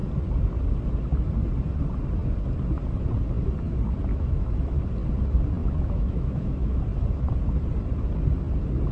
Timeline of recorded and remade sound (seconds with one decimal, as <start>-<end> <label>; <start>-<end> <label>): 0.0-4.1 recorded; 4.1-4.8 remade; 4.8-5.6 recorded; 5.6-6.8 remade; 6.8-8.9 recorded